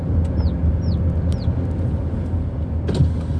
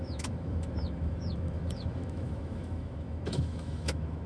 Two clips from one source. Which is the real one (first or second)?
first